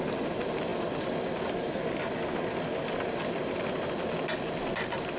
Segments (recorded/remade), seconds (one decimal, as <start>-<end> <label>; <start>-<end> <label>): 0.0-5.2 recorded